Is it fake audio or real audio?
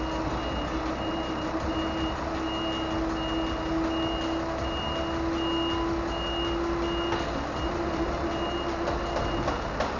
real